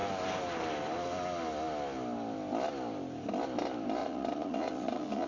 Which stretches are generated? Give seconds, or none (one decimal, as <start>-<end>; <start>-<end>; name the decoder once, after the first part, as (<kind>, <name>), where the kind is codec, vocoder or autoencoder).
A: 4.0-5.3 (vocoder, Vocos)

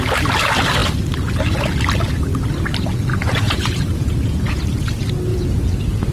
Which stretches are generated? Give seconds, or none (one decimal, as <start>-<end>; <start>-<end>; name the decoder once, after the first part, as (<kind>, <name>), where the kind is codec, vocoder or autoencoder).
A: 3.1-4.6 (vocoder, Vocos); 5.3-6.1

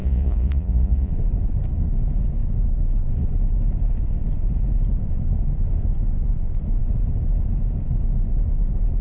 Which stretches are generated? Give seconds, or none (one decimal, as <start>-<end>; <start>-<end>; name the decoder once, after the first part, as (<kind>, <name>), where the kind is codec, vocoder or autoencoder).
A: 0.0-1.1 (vocoder, Vocos)

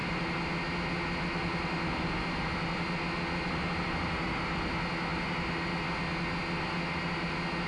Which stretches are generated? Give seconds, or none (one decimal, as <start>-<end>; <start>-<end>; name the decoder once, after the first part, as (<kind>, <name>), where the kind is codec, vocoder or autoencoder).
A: none

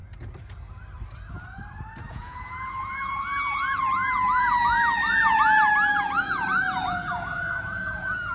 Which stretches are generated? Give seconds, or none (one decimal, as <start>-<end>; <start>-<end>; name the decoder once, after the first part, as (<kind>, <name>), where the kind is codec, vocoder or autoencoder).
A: 2.1-8.3 (vocoder, Vocos)